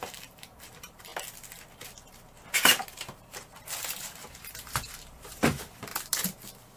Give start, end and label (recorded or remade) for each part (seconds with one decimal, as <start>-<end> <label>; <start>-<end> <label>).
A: 0.0-1.1 remade; 1.1-3.8 recorded; 3.8-5.9 remade; 5.9-6.8 recorded